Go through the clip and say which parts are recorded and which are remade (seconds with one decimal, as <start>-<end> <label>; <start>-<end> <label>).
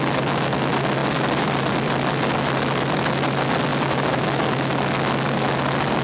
0.0-6.0 recorded